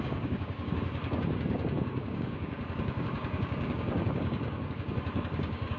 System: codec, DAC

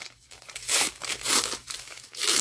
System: codec, DAC